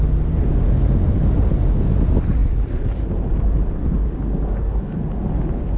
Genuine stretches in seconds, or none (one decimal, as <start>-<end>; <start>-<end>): 0.0-5.8